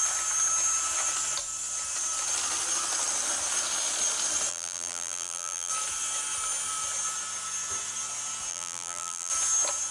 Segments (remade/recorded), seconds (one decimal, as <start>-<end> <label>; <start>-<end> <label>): 0.0-4.5 recorded; 4.5-5.7 remade; 5.7-8.5 recorded; 8.5-9.3 remade; 9.3-9.9 recorded